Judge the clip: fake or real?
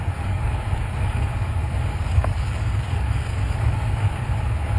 fake